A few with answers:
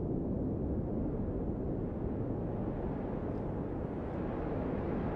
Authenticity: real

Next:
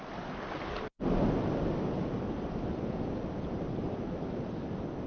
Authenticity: real